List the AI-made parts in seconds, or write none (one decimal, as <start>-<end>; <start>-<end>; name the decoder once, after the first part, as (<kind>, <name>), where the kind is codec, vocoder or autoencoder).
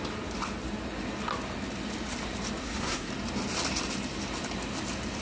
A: 2.6-3.1 (codec, SNAC)